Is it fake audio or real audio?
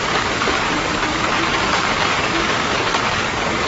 fake